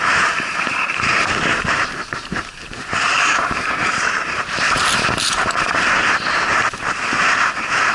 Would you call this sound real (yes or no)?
no